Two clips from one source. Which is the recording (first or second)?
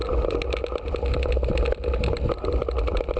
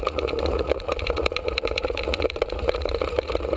first